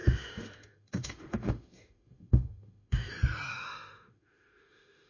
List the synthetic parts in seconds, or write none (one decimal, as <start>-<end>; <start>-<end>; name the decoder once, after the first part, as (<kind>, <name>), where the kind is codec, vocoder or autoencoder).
0.0-3.1 (autoencoder, DAC-VAE); 3.5-5.1